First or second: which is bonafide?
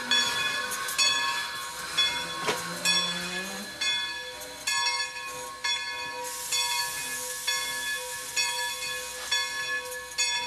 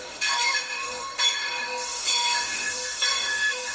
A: first